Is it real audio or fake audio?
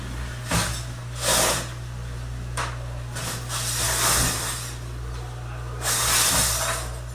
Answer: real